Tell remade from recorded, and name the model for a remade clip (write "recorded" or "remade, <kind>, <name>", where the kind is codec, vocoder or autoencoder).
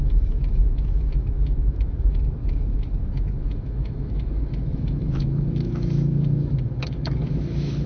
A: remade, autoencoder, DAC-VAE